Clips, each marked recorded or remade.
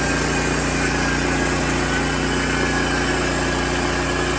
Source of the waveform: recorded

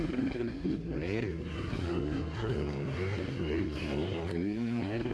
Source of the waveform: remade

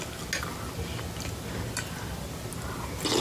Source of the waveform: recorded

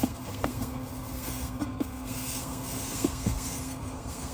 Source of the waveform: remade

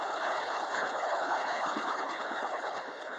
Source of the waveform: remade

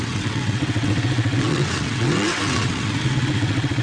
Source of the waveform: remade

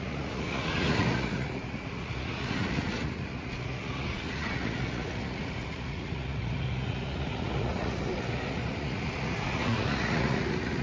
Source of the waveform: remade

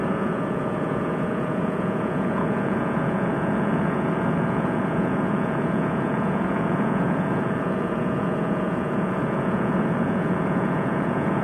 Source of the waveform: remade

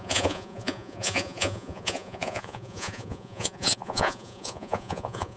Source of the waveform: remade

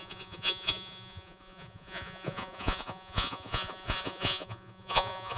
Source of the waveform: remade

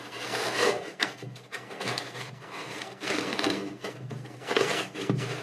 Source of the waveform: remade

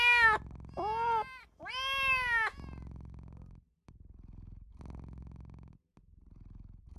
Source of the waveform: recorded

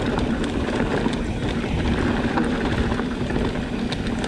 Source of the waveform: recorded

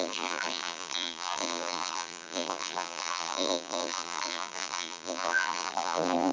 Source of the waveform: remade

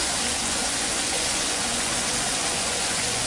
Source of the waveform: remade